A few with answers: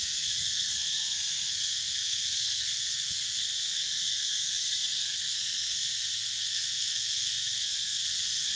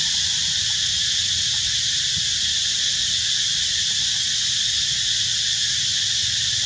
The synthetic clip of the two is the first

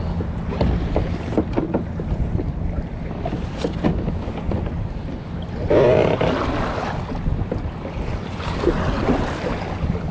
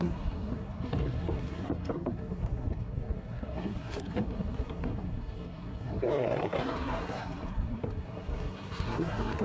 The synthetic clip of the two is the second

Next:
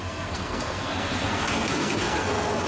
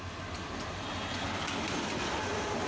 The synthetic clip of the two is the first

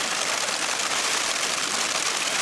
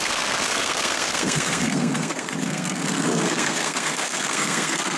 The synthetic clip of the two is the second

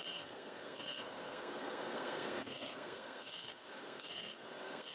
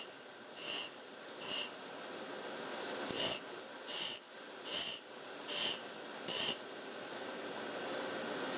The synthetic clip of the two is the first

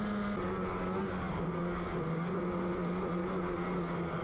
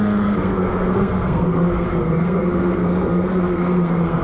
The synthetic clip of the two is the second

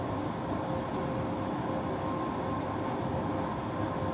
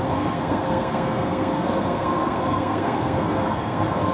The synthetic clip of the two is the second